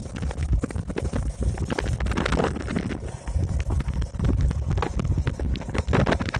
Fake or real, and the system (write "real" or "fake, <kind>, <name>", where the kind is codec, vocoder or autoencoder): real